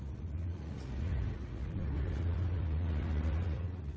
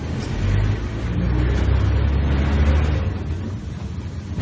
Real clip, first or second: second